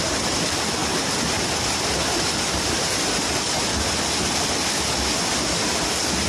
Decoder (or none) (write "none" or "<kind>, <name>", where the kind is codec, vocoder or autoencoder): none